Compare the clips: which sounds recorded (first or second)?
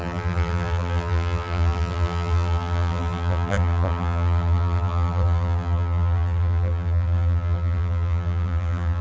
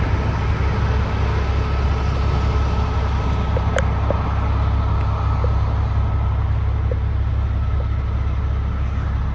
second